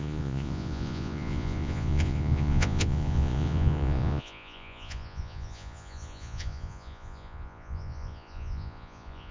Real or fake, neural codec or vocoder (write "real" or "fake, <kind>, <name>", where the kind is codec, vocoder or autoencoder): fake, vocoder, Vocos